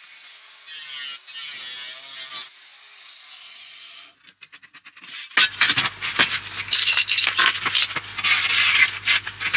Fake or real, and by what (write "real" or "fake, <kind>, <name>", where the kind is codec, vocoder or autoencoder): real